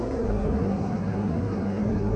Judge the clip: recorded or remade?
remade